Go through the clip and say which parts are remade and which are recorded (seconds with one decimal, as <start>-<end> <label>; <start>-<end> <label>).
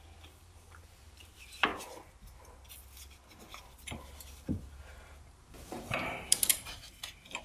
0.0-1.7 remade; 1.7-3.6 recorded; 3.6-7.4 remade